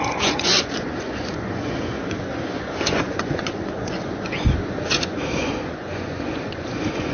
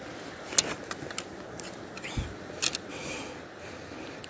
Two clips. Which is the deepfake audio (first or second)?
first